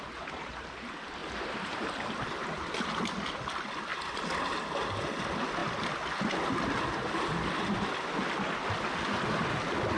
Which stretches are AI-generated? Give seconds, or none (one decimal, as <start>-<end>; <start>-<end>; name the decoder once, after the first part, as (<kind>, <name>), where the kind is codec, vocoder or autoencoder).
1.2-2.6 (vocoder, BigVGAN v2)

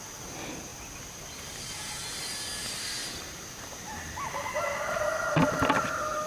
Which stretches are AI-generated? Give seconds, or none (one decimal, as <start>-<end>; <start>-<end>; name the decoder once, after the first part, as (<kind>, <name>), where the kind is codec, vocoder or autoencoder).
none

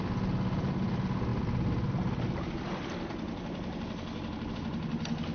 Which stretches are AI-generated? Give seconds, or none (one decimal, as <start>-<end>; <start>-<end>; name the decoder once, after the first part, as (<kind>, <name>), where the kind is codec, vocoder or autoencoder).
none